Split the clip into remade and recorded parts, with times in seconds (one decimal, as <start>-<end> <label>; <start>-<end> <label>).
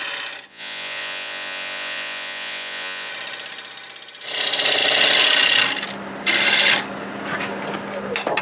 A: 0.0-0.5 recorded; 0.5-3.1 remade; 3.1-8.4 recorded